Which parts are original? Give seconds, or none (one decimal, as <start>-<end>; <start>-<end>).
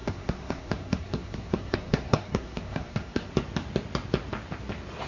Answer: 3.3-5.1